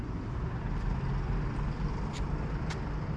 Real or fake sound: real